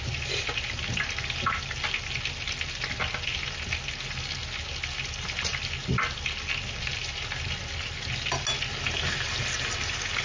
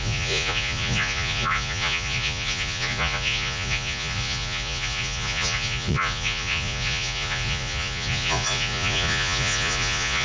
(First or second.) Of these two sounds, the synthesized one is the second